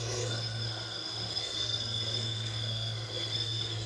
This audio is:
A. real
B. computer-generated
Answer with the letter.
B